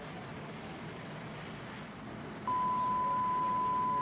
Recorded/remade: recorded